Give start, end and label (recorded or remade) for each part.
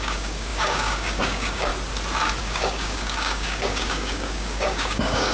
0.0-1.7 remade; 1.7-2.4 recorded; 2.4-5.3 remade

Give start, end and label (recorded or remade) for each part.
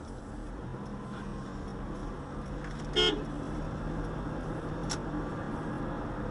0.0-6.3 recorded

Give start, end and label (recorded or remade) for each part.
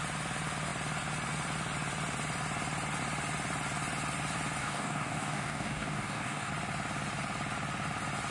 0.0-4.6 recorded; 4.6-6.5 remade; 6.5-8.3 recorded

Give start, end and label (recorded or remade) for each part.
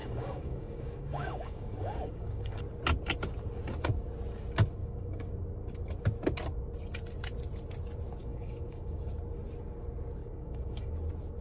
0.0-2.6 remade; 2.6-4.8 recorded; 4.8-5.3 remade; 5.3-8.2 recorded; 8.2-9.1 remade; 9.1-10.2 recorded; 10.2-10.9 remade; 10.9-11.4 recorded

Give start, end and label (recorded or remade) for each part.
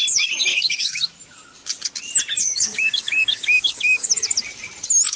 0.0-0.5 recorded; 0.5-1.0 remade; 1.0-2.4 recorded; 2.4-4.1 remade; 4.1-5.2 recorded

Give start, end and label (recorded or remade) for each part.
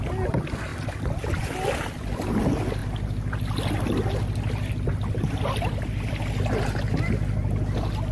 0.0-8.1 recorded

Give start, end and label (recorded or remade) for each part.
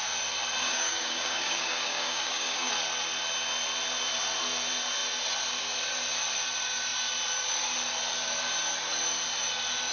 0.0-0.6 recorded; 0.6-2.7 remade; 2.7-9.9 recorded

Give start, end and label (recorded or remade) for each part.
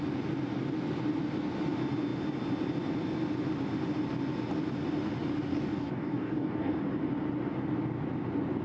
0.0-5.5 recorded; 5.5-6.8 remade; 6.8-8.6 recorded